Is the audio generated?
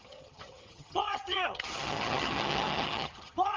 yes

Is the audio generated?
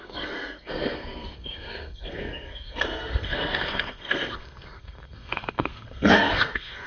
yes